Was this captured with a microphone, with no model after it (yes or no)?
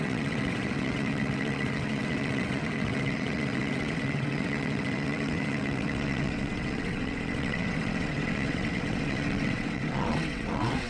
no